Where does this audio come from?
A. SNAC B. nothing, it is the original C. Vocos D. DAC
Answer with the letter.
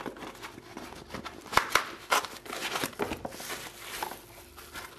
B